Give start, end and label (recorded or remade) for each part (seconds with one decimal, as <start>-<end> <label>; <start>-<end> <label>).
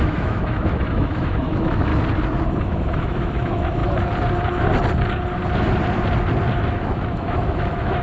0.0-1.9 remade; 1.9-2.6 recorded; 2.6-3.8 remade; 3.8-6.7 recorded; 6.7-8.0 remade